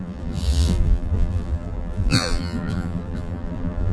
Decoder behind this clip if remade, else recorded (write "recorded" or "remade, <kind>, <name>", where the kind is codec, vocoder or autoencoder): remade, vocoder, BigVGAN v2